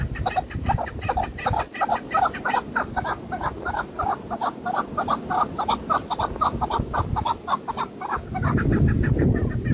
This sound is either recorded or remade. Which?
recorded